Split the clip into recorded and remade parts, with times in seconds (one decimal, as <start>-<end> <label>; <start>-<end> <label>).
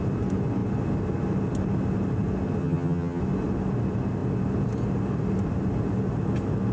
0.0-2.6 recorded; 2.6-3.2 remade; 3.2-6.7 recorded